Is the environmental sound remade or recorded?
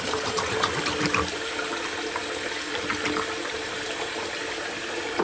recorded